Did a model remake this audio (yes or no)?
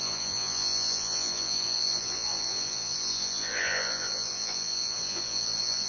yes